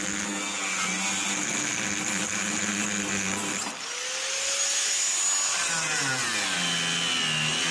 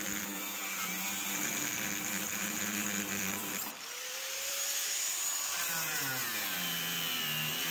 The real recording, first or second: first